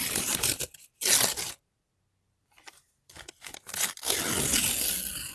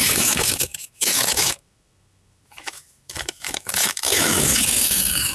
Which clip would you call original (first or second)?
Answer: first